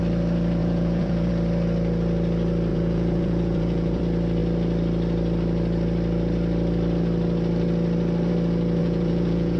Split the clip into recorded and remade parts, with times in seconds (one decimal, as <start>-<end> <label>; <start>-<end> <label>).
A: 0.0-0.6 recorded; 0.6-1.3 remade; 1.3-2.7 recorded; 2.7-4.0 remade; 4.0-8.8 recorded; 8.8-9.6 remade